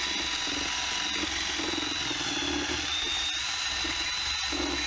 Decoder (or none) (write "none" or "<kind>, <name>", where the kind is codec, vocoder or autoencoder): none